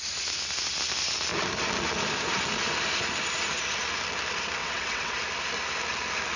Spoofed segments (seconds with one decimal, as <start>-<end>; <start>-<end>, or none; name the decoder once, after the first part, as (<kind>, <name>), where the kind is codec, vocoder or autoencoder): 4.6-5.2 (vocoder, WaveNeXt)